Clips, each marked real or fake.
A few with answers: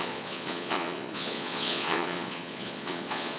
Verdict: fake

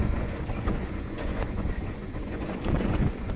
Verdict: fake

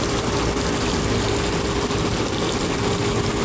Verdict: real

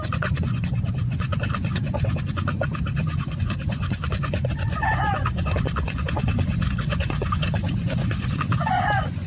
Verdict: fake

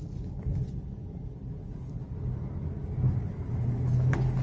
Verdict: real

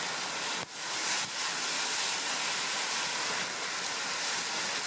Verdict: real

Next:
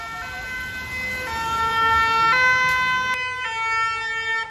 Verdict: real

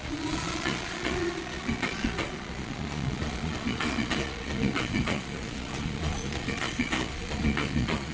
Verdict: fake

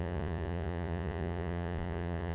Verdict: fake